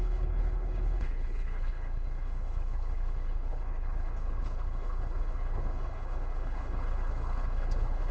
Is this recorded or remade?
remade